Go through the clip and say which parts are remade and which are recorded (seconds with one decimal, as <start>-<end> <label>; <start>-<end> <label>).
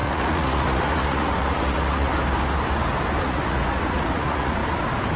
0.0-2.1 remade; 2.1-3.2 recorded; 3.2-4.6 remade; 4.6-5.2 recorded